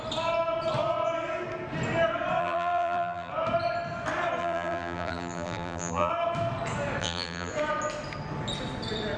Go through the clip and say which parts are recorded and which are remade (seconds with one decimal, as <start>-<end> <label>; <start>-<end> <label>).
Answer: 0.0-2.4 recorded; 2.4-3.3 remade; 3.3-4.4 recorded; 4.4-6.1 remade; 6.1-7.0 recorded; 7.0-7.5 remade; 7.5-9.2 recorded